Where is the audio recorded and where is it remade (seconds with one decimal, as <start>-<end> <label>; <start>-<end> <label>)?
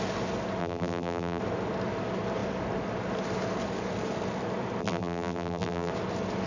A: 0.0-0.6 recorded; 0.6-1.4 remade; 1.4-4.8 recorded; 4.8-5.9 remade; 5.9-6.5 recorded